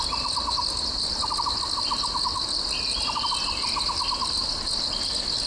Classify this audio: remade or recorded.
recorded